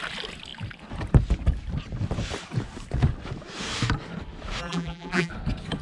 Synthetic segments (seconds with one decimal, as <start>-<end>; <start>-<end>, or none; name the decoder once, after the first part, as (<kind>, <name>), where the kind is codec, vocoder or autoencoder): 4.6-5.3 (vocoder, BigVGAN v2)